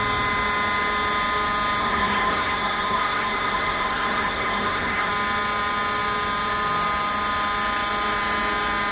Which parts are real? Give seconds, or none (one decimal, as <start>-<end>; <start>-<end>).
0.0-1.8; 5.1-8.9